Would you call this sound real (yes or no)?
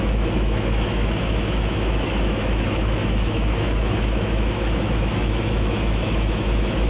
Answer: no